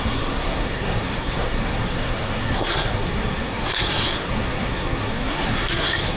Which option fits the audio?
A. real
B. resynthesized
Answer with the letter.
B